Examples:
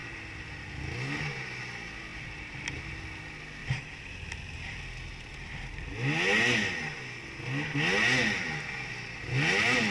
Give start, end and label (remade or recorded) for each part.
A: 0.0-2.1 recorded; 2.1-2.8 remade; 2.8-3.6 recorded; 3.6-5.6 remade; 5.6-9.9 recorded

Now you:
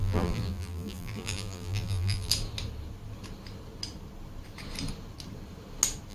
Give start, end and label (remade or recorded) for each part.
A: 0.0-2.3 remade; 2.3-6.1 recorded

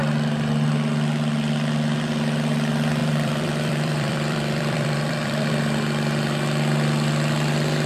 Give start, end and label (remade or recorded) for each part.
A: 0.0-3.0 recorded; 3.0-5.5 remade; 5.5-7.9 recorded